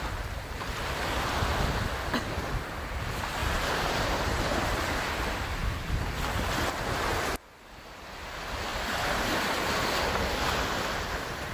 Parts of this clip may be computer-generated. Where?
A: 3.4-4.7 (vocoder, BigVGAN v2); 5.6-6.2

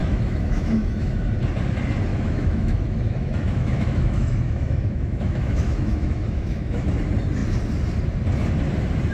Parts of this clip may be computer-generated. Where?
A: 0.0-1.1 (autoencoder, DAC-VAE); 2.1-6.9

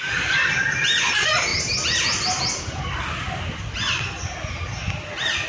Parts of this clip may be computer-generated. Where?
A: none

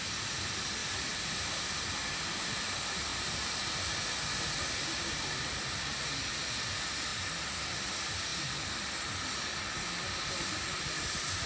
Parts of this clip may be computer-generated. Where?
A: 3.1-4.5 (vocoder, BigVGAN v2); 7.1-7.9; 8.3-9.6

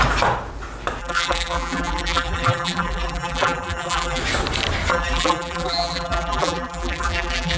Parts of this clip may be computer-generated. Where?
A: 1.0-4.2 (vocoder, BigVGAN v2); 4.9-7.6